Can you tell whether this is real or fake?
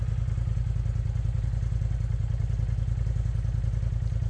real